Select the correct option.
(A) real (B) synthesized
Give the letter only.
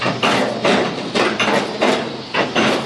A